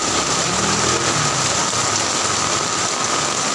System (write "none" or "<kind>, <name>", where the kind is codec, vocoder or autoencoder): none